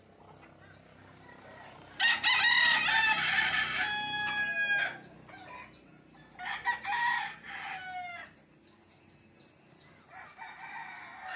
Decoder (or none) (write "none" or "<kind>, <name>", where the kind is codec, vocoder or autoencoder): none